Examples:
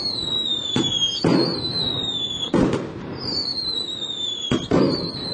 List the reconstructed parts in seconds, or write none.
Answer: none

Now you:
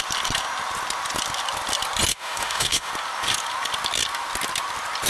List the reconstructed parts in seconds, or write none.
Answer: 2.1-2.9 (autoencoder, DAC-VAE)

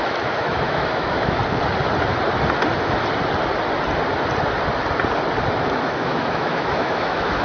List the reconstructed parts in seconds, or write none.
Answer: 0.0-1.4 (autoencoder, DAC-VAE); 5.8-7.4

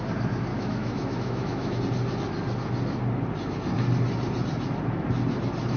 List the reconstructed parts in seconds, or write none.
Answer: 0.5-1.8 (autoencoder, DAC-VAE)